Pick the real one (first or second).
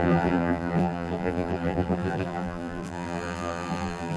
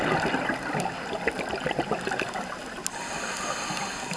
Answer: second